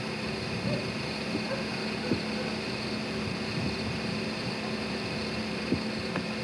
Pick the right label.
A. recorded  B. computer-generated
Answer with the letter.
A